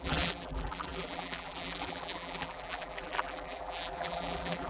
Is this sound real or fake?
fake